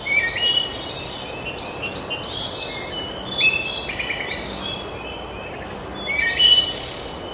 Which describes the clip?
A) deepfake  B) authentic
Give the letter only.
B